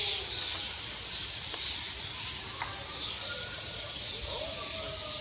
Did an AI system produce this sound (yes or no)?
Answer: no